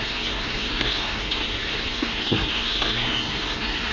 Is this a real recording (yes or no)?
no